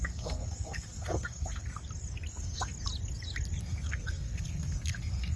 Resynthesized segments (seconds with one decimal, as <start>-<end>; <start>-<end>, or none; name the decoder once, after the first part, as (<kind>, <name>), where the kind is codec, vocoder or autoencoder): 0.0-1.8 (codec, SNAC); 2.3-2.7; 3.6-5.4